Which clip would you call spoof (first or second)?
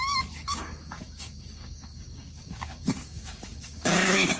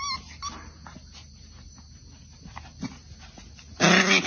first